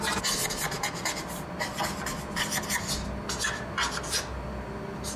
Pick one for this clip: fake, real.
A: real